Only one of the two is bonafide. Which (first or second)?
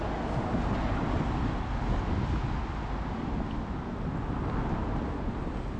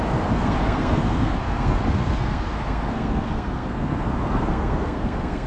first